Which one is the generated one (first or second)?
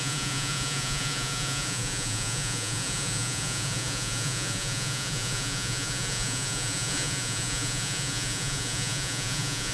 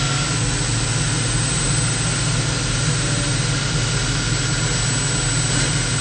first